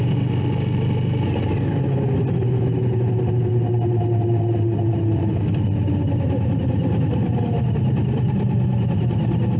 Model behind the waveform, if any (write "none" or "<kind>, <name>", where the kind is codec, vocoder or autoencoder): none